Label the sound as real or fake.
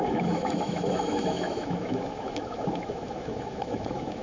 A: fake